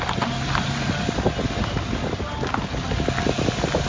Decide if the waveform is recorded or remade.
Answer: recorded